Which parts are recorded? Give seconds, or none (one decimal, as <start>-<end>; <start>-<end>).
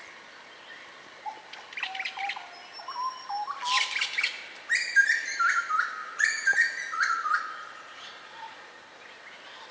0.0-6.0; 8.7-9.7